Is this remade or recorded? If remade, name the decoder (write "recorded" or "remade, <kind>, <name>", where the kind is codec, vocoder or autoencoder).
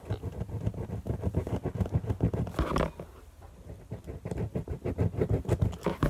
recorded